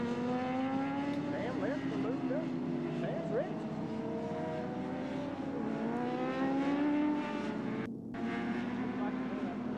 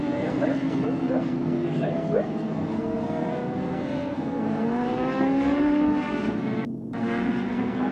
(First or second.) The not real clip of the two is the second